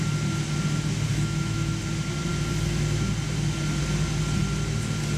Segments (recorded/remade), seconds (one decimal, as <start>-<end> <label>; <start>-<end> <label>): 0.0-1.1 recorded; 1.1-1.8 remade; 1.8-5.2 recorded